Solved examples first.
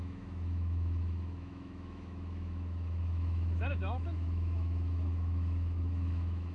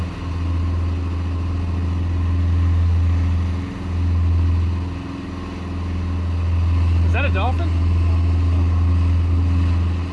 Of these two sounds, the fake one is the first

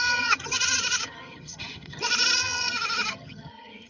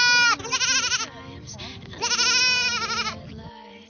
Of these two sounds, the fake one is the first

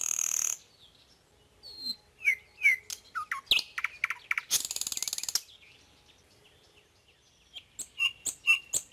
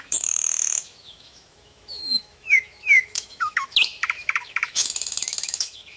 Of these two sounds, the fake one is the second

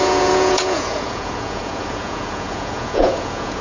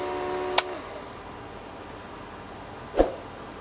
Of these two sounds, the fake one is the first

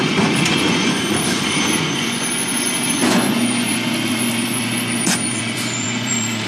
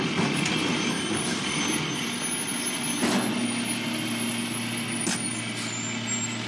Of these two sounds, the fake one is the first